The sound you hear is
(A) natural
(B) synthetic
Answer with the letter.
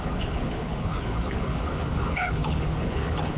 B